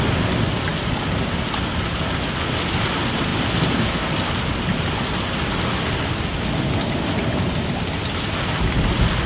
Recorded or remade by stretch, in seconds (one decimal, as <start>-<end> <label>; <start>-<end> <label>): 0.0-9.3 recorded